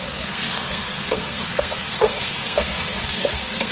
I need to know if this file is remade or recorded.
remade